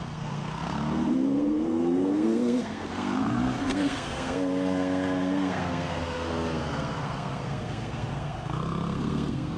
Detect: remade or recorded remade